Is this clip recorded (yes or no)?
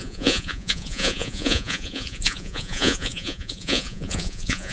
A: no